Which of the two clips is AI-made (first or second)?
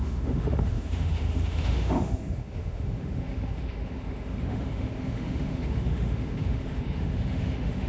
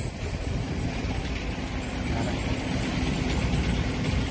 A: first